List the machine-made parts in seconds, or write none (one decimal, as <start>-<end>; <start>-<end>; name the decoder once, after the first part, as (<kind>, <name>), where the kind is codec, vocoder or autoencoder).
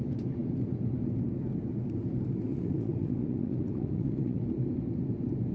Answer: 2.5-4.4 (vocoder, Vocos)